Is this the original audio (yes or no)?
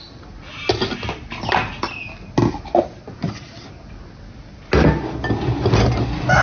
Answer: yes